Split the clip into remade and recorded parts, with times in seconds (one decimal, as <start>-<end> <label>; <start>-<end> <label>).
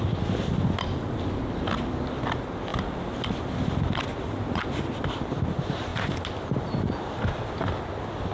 0.0-2.7 recorded; 2.7-3.5 remade; 3.5-8.3 recorded